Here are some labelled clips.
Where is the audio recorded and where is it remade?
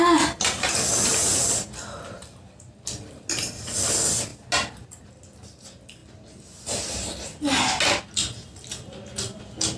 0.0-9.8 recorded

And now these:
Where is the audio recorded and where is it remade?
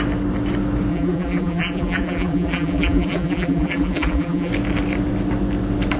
0.0-0.9 recorded; 0.9-4.5 remade; 4.5-6.0 recorded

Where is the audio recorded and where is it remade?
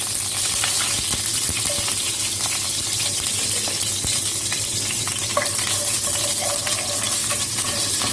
0.0-7.2 recorded; 7.2-8.1 remade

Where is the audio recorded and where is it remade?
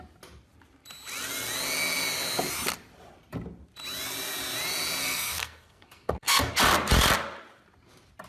0.0-5.0 recorded; 5.0-6.5 remade; 6.5-8.3 recorded